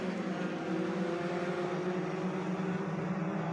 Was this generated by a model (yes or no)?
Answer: no